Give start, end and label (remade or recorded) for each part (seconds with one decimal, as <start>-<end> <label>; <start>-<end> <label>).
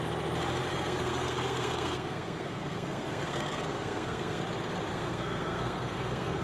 0.0-0.7 recorded; 0.7-4.4 remade; 4.4-4.9 recorded; 4.9-6.4 remade